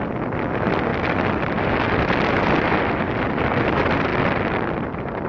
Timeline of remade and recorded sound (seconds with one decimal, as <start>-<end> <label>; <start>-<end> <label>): 0.0-5.3 recorded

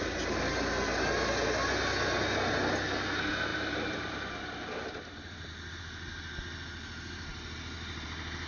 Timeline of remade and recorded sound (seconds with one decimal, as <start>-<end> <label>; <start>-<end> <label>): 0.0-3.5 recorded; 3.5-5.5 remade; 5.5-8.5 recorded

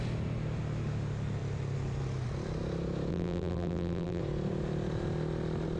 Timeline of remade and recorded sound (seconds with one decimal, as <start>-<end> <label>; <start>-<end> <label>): 0.0-3.1 recorded; 3.1-4.2 remade; 4.2-5.8 recorded

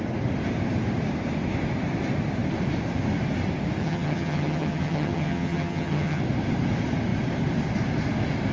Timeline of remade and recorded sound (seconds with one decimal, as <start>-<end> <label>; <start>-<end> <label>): 0.0-3.8 recorded; 3.8-6.2 remade; 6.2-8.5 recorded

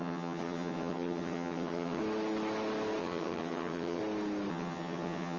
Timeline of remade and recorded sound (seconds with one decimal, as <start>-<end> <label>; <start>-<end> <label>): 0.0-2.0 remade; 2.0-3.0 recorded; 3.0-4.0 remade; 4.0-4.5 recorded; 4.5-5.4 remade

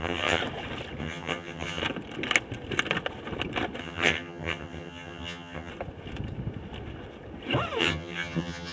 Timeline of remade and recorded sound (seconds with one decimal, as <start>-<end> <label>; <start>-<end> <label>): 0.0-0.4 remade; 0.4-1.0 recorded; 1.0-1.8 remade; 1.8-3.8 recorded; 3.8-5.7 remade; 5.7-7.8 recorded; 7.8-8.7 remade

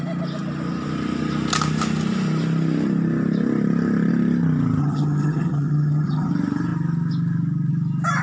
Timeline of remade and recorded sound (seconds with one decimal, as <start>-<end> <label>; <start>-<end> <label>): 0.0-4.8 recorded; 4.8-6.3 remade; 6.3-8.2 recorded